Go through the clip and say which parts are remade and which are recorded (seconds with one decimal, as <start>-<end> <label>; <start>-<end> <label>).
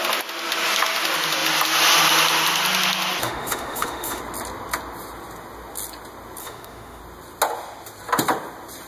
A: 0.0-3.2 recorded; 3.2-4.2 remade; 4.2-6.4 recorded; 6.4-7.0 remade; 7.0-8.9 recorded